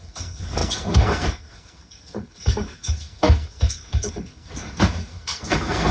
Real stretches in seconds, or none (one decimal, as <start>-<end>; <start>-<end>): none